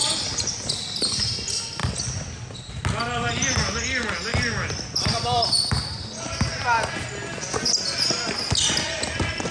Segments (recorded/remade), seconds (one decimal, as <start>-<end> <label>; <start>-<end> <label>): 0.0-9.5 recorded